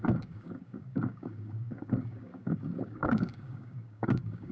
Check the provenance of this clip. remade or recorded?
remade